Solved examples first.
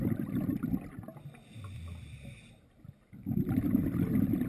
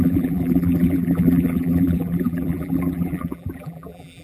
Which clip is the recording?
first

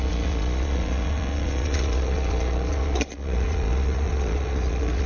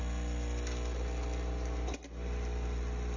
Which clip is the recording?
second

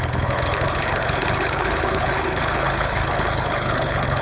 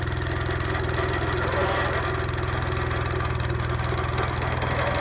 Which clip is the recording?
second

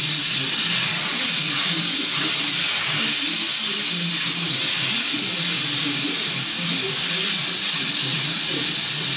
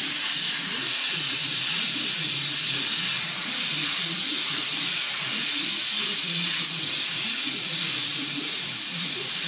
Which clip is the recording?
first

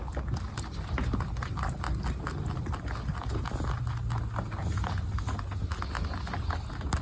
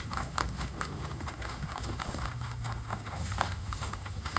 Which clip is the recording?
first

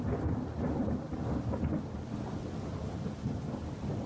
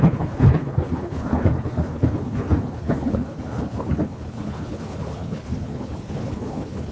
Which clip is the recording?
first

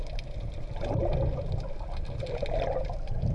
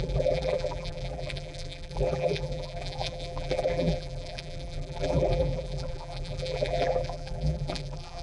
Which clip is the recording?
first